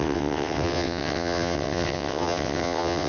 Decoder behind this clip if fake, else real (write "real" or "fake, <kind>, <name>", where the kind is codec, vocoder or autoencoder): fake, vocoder, WaveNeXt